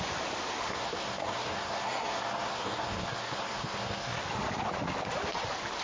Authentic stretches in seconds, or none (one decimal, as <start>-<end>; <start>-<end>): 0.0-0.7; 4.2-5.8